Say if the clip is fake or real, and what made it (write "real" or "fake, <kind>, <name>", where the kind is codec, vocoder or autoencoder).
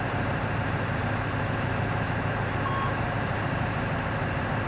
real